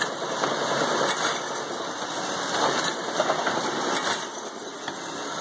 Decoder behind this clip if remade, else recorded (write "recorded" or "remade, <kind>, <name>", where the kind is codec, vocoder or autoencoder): recorded